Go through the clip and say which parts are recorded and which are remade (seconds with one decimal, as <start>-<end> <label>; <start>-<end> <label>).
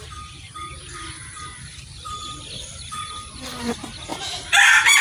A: 0.0-4.1 remade; 4.1-5.0 recorded